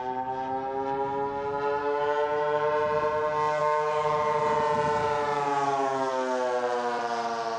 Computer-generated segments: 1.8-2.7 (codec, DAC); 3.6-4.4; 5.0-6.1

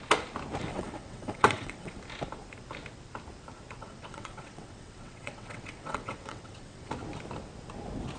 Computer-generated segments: 0.7-2.0 (vocoder, WaveNeXt); 3.8-6.9

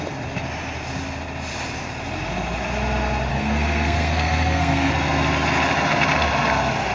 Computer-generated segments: 3.3-4.9 (codec, SNAC)